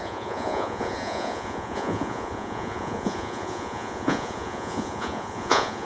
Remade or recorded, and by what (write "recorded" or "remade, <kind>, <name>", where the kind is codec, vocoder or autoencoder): remade, vocoder, Vocos